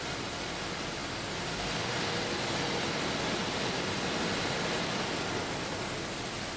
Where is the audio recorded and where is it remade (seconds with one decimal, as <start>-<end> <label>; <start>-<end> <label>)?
0.0-6.6 recorded